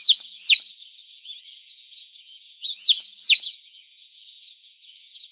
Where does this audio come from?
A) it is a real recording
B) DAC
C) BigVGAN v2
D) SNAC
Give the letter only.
C